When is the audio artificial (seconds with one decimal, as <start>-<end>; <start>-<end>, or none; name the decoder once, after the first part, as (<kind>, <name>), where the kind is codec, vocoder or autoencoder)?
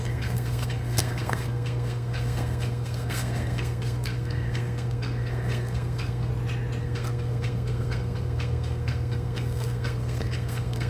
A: 0.0-6.3 (codec, SNAC); 6.8-10.9